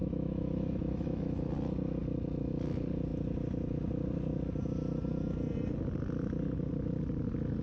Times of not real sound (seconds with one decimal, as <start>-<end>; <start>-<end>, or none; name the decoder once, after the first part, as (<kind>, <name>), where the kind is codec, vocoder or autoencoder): 0.0-1.5 (autoencoder, DAC-VAE)